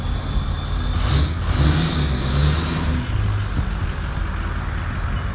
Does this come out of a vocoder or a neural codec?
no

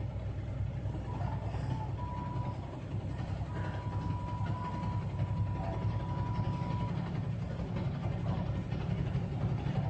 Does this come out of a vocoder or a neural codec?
no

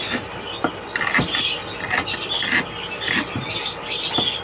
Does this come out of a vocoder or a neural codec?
no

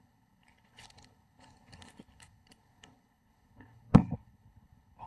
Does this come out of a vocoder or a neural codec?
yes